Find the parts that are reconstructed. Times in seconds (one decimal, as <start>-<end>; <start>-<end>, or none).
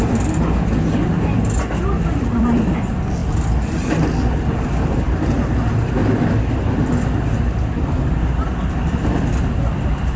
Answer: none